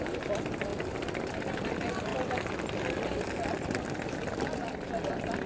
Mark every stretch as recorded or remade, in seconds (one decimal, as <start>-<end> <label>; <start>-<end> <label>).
0.0-5.5 recorded